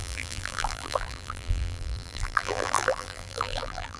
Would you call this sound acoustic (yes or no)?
no